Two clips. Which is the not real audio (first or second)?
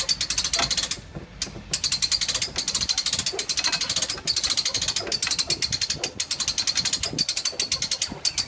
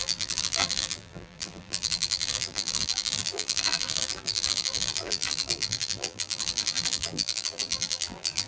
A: second